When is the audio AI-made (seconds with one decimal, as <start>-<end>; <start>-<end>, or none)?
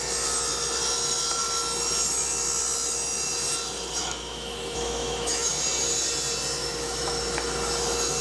4.0-5.5; 6.6-7.2